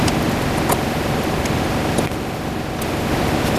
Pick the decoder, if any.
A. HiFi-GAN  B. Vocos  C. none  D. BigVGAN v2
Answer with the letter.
C